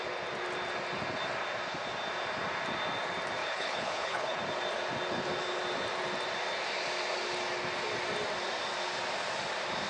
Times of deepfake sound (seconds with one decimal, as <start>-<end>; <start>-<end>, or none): 3.4-4.4